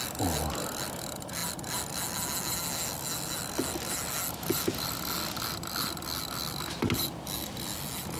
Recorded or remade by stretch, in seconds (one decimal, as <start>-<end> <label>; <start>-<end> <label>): 0.0-8.2 recorded